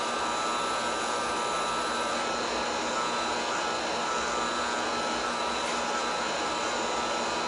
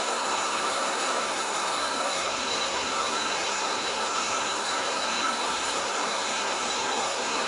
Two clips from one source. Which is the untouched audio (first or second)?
first